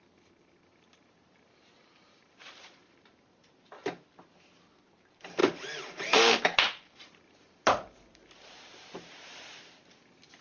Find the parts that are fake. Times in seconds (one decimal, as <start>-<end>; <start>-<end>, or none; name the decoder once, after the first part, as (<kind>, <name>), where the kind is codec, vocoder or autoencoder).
0.7-4.1 (vocoder, BigVGAN v2); 5.4-9.6